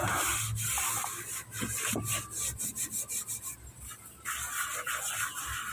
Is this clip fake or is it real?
real